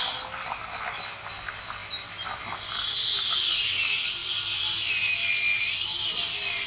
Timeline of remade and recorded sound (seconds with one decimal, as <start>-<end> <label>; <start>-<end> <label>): 0.0-6.7 recorded